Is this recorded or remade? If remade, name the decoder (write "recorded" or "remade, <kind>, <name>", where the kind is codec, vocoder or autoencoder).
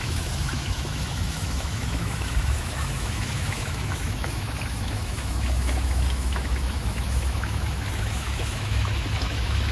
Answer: remade, autoencoder, DAC-VAE